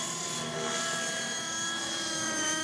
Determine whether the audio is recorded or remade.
recorded